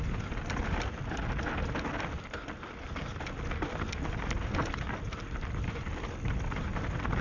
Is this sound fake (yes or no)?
no